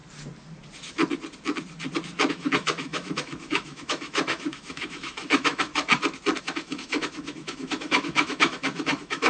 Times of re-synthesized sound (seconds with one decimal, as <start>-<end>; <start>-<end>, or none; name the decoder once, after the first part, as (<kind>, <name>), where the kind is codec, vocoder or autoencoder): 2.3-5.7 (autoencoder, DAC-VAE); 6.4-9.3